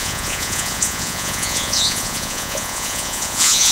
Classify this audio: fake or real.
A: fake